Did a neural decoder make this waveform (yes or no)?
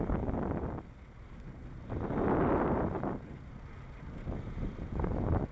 no